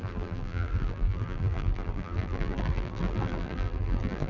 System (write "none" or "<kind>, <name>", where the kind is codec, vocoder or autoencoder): vocoder, BigVGAN v2